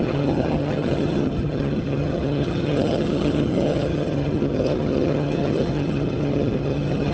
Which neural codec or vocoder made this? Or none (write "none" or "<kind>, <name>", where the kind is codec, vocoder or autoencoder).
vocoder, HiFi-GAN